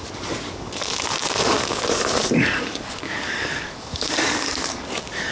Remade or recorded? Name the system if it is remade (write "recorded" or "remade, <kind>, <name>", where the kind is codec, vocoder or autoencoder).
remade, codec, DAC